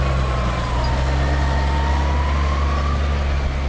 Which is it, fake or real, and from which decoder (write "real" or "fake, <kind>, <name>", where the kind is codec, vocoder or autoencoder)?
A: real